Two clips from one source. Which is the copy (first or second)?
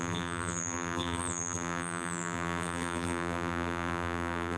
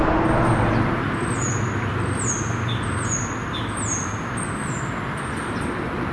first